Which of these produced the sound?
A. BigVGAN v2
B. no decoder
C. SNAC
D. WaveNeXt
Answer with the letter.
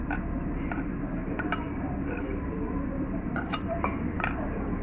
A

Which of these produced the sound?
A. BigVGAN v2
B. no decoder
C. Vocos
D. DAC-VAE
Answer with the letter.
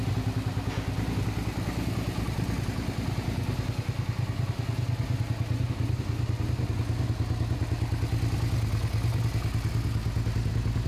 B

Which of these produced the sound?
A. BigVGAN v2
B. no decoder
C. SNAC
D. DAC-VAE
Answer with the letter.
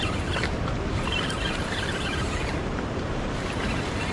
A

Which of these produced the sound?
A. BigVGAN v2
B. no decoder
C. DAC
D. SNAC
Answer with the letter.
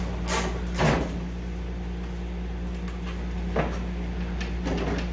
B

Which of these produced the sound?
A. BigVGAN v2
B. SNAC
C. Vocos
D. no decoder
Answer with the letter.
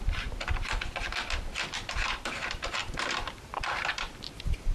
A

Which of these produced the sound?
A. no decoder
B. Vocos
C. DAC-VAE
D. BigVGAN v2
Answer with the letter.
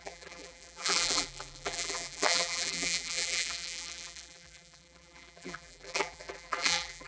D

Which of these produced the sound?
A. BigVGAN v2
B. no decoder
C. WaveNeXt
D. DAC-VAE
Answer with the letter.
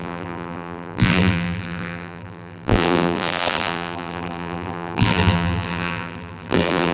A